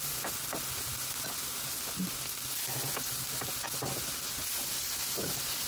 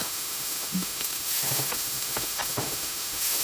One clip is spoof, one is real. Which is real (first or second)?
first